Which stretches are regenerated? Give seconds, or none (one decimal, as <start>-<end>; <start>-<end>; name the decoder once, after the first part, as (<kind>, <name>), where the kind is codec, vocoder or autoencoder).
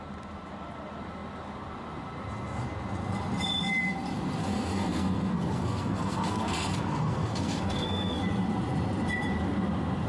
4.4-8.2 (codec, SNAC)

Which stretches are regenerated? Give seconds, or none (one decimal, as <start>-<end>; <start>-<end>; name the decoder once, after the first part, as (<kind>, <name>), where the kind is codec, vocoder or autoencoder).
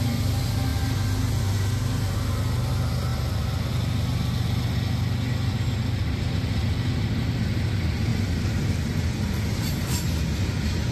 none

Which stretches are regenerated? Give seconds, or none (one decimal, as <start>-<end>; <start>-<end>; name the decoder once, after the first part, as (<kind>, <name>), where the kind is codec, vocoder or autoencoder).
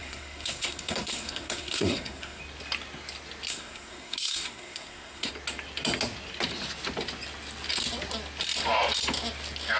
0.0-2.4 (codec, SNAC); 3.5-5.3